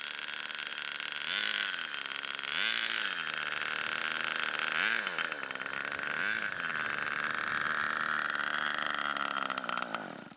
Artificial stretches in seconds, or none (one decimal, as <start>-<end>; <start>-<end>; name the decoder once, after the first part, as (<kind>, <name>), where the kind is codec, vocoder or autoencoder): none